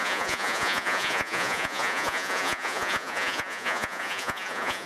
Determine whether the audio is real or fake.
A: fake